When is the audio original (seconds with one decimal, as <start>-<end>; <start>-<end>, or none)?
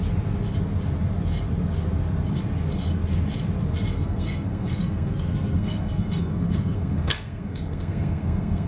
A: 0.0-3.9